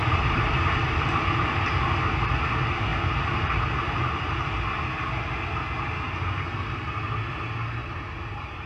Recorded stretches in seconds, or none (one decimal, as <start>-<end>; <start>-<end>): 1.2-7.8